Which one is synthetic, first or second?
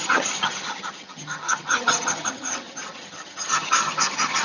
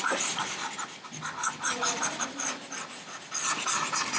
first